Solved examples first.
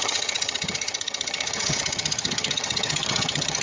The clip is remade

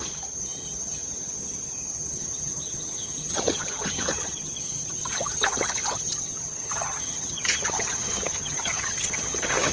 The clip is remade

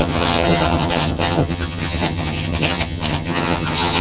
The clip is remade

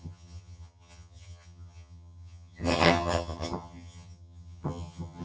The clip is remade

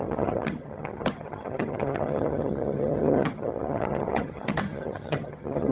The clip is remade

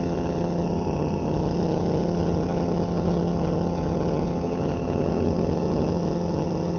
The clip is remade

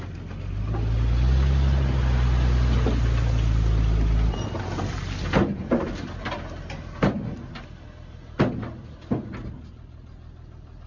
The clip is recorded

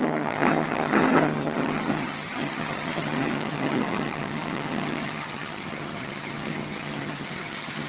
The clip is remade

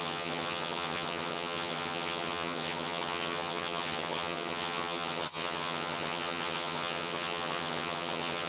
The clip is remade